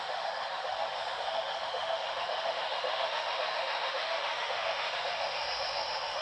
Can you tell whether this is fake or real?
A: fake